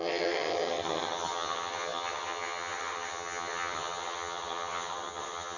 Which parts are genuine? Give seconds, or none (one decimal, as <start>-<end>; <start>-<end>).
none